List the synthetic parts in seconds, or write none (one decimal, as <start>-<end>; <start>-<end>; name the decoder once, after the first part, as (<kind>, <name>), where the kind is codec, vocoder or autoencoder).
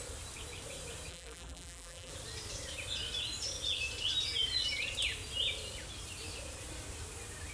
1.1-2.1 (vocoder, BigVGAN v2)